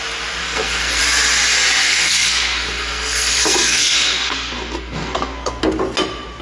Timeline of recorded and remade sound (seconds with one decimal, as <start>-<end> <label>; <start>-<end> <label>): 0.0-0.4 recorded; 0.4-1.0 remade; 1.0-1.8 recorded; 1.8-5.6 remade; 5.6-6.4 recorded